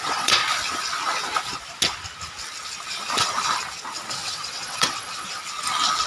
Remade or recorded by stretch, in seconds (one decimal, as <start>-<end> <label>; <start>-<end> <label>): 0.0-0.4 remade; 0.4-4.1 recorded; 4.1-5.4 remade; 5.4-6.1 recorded